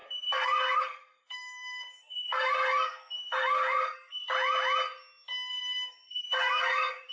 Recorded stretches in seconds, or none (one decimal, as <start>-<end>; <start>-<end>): 4.2-5.5